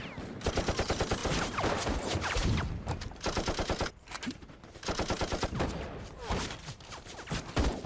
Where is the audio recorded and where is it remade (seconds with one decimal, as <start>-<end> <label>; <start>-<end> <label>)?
0.0-1.2 recorded; 1.2-5.6 remade; 5.6-7.9 recorded